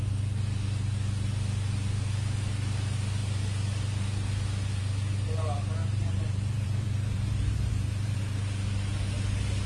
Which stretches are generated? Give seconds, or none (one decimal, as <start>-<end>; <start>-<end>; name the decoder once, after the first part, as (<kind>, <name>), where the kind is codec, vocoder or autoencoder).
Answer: 5.8-8.2 (vocoder, BigVGAN v2)